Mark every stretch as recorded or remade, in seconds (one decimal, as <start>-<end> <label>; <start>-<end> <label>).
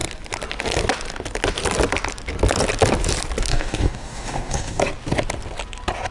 0.0-3.5 recorded; 3.5-4.8 remade; 4.8-6.1 recorded